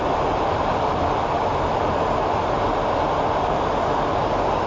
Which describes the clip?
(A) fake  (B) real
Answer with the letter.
B